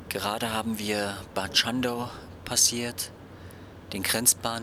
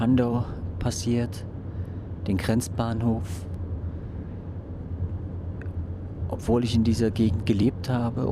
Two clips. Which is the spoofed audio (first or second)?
second